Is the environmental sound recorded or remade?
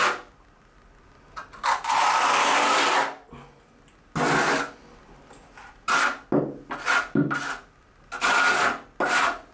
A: recorded